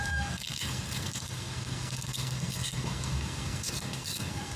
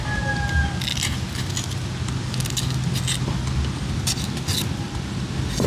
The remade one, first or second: first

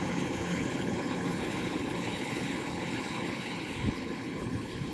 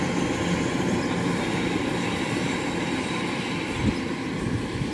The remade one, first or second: first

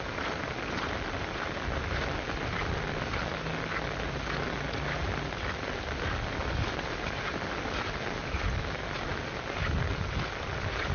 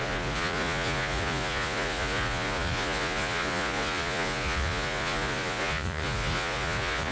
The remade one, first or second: second